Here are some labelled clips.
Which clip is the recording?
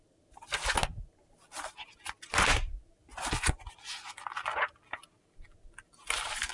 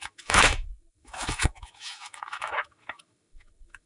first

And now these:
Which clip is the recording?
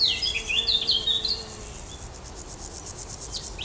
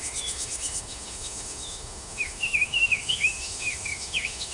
first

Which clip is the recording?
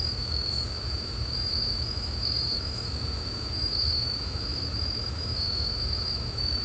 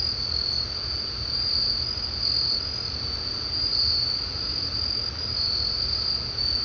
second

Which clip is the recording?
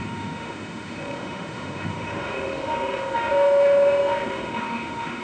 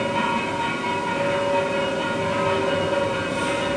second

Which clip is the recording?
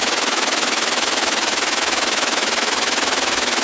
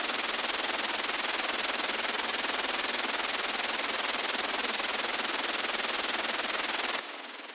second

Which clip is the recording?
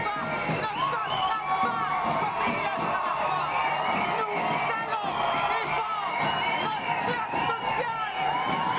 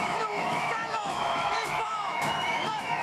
first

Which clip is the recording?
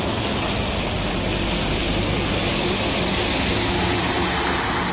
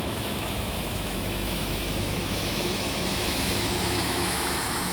first